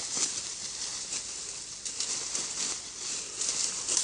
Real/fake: real